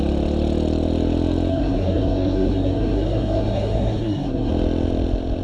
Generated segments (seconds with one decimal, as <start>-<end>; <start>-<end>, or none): 1.5-4.5

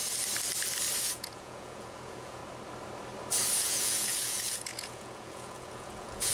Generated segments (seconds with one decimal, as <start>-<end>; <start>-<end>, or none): 1.0-2.4; 3.6-6.3

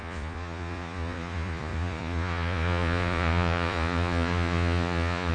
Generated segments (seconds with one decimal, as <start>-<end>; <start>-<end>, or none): 0.0-5.3

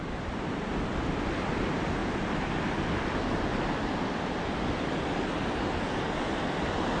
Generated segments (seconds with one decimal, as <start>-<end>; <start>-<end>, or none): none

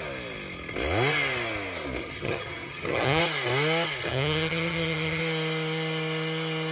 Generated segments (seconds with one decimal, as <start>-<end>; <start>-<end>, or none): 2.0-3.2; 4.0-5.2

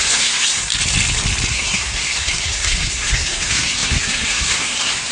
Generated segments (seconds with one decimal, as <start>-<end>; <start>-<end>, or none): 0.0-0.7; 1.5-5.1

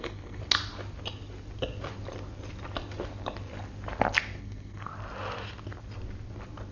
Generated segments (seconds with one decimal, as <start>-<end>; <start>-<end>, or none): 0.0-0.4; 4.4-4.9

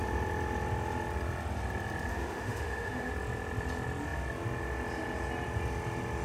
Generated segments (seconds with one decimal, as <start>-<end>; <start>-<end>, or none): 2.1-3.1